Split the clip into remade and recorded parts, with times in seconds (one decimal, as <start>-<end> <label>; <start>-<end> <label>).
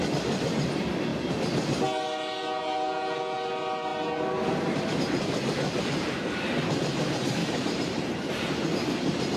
0.0-7.4 recorded; 7.4-8.4 remade; 8.4-9.4 recorded